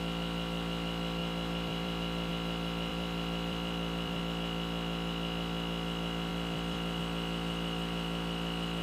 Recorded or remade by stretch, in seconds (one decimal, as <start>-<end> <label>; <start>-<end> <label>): 0.0-1.2 recorded; 1.2-2.3 remade; 2.3-2.9 recorded; 2.9-4.2 remade; 4.2-6.3 recorded; 6.3-7.0 remade; 7.0-8.8 recorded